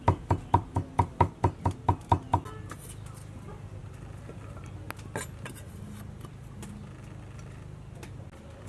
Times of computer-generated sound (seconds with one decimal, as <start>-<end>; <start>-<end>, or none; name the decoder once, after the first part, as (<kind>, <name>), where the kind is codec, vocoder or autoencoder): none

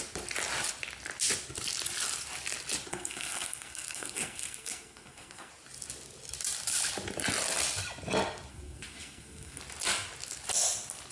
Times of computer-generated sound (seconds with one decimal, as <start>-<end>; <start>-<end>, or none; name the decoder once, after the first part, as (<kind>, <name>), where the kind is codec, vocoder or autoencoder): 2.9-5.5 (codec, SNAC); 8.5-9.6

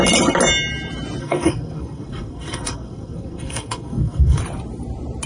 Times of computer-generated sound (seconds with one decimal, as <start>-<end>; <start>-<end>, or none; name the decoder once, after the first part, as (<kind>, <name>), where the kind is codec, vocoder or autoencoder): 1.2-4.4 (codec, SNAC)

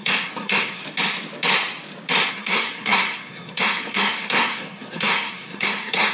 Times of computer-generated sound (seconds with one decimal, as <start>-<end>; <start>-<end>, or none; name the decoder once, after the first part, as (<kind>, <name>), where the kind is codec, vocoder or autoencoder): 0.0-0.8 (codec, SNAC); 2.3-6.1

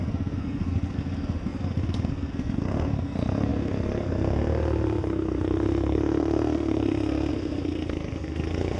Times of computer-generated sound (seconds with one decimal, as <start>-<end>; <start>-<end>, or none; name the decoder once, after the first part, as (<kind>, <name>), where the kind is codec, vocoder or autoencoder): 0.0-8.8 (codec, SNAC)

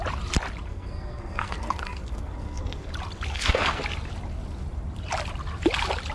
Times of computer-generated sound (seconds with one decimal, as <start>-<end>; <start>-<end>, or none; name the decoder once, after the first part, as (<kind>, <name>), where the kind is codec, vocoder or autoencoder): 0.7-2.9 (codec, SNAC); 3.3-3.8

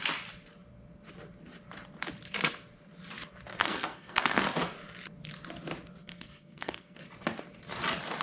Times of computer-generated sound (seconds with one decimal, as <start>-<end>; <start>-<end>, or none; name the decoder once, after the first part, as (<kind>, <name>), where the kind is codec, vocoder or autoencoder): 3.5-4.4 (codec, SNAC); 6.0-7.0

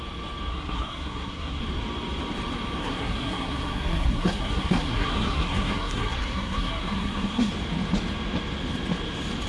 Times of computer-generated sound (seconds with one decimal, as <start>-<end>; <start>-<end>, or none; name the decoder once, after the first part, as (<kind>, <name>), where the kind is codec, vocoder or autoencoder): 0.5-1.6 (codec, SNAC); 2.8-7.5